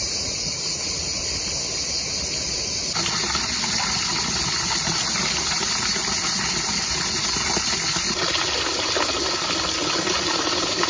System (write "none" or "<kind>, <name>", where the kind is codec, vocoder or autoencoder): none